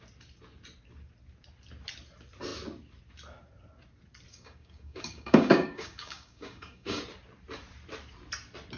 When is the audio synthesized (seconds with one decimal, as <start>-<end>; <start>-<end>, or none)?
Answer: 4.3-7.0